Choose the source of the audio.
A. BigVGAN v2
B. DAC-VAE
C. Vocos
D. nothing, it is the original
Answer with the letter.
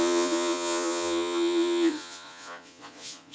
C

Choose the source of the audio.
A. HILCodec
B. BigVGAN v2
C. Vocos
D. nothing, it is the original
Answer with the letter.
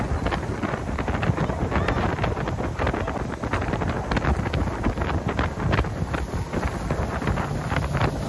D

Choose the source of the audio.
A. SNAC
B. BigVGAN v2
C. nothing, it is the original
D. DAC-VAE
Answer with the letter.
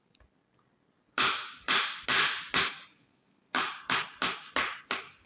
C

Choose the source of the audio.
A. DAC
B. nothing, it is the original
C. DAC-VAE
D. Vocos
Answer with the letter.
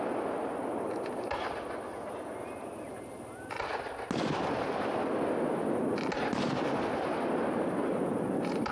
B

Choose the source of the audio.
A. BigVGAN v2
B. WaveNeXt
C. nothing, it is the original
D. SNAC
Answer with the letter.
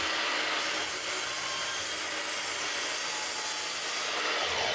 C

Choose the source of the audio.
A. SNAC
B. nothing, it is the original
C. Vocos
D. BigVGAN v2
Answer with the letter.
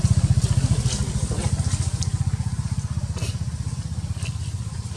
B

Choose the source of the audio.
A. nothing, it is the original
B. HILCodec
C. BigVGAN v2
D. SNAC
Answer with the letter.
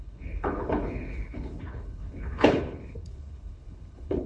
B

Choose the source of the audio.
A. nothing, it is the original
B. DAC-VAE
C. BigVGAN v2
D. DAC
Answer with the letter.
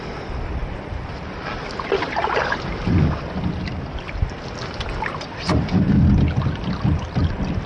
A